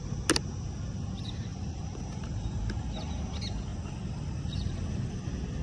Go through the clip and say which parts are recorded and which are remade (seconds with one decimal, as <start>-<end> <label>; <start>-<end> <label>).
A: 0.0-1.5 recorded; 1.5-2.6 remade; 2.6-3.7 recorded; 3.7-5.1 remade; 5.1-5.6 recorded